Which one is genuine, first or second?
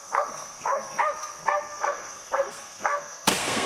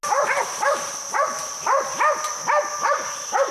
second